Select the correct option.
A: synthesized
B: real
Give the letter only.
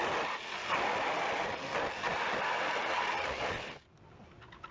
B